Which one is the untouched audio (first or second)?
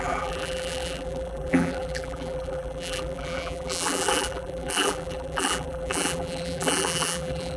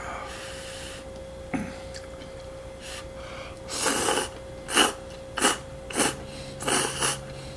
second